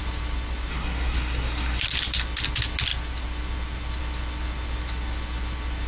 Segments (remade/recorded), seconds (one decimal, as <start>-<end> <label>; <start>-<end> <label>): 0.0-0.7 recorded; 0.7-1.8 remade; 1.8-5.9 recorded